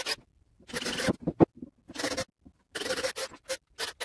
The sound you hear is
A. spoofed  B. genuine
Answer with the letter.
B